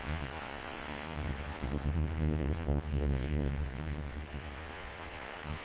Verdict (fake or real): fake